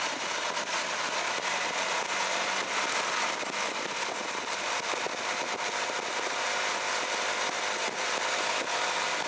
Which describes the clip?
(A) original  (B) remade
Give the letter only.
A